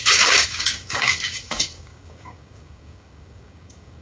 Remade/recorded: remade